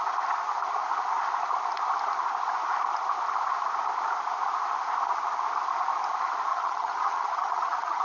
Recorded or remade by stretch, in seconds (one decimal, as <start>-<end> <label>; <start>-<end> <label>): 0.0-6.5 recorded; 6.5-8.0 remade